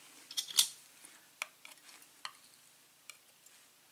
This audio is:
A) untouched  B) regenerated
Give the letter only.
A